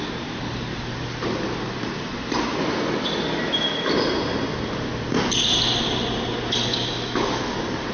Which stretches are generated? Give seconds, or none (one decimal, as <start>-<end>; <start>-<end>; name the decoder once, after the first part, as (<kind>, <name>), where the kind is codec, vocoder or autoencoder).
6.7-7.5 (autoencoder, DAC-VAE)